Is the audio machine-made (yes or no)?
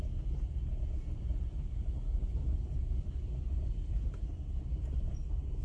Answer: no